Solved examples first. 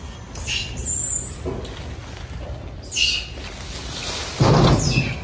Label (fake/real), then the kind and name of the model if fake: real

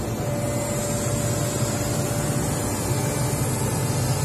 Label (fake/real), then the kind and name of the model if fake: real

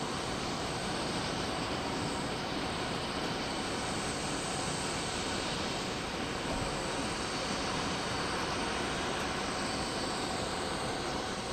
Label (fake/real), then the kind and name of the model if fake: fake, vocoder, BigVGAN v2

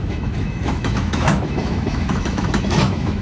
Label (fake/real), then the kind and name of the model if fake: fake, autoencoder, DAC-VAE